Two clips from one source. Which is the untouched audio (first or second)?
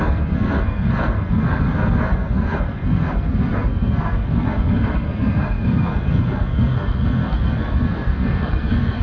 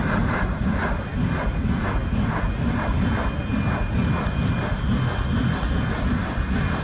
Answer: second